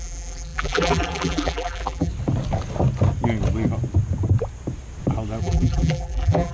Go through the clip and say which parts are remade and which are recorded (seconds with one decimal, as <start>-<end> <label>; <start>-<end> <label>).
0.0-2.1 remade; 2.1-5.4 recorded; 5.4-6.5 remade